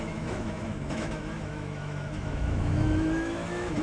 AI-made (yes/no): yes